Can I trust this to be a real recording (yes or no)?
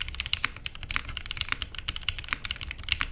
yes